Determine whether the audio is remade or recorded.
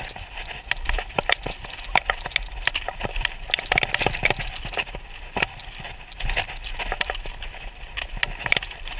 recorded